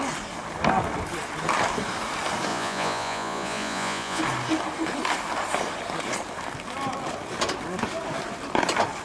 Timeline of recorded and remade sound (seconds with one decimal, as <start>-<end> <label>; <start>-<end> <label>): 0.0-2.5 recorded; 2.5-4.2 remade; 4.2-9.0 recorded